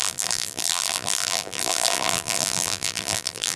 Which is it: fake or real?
fake